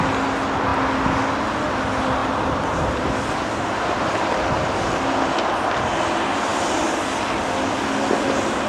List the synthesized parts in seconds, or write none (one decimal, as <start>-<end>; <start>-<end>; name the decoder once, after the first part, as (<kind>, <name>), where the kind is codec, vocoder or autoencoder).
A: 2.2-5.2 (vocoder, BigVGAN v2)

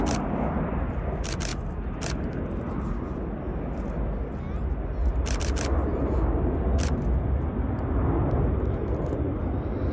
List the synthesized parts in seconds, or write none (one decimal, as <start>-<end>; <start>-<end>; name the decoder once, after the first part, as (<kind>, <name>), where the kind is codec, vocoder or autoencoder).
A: none

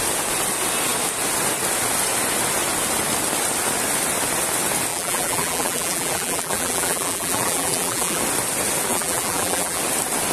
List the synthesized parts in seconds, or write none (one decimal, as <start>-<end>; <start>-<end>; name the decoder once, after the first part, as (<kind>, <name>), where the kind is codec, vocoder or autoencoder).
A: 4.9-8.2 (vocoder, BigVGAN v2); 8.9-9.8